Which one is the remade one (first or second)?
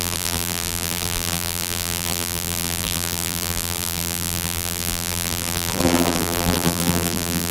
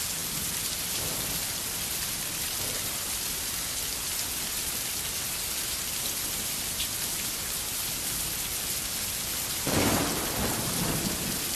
first